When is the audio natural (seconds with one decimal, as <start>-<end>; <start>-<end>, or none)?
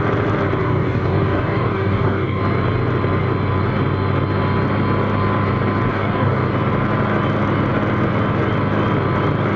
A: 0.0-0.6; 2.4-5.9; 6.4-9.6